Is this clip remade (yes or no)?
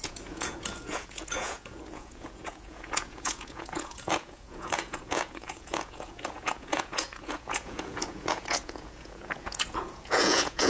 yes